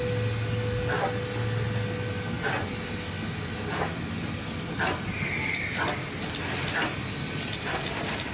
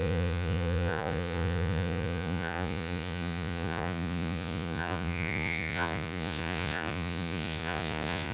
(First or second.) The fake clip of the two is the second